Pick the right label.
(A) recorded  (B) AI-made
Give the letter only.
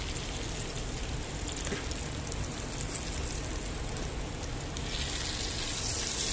A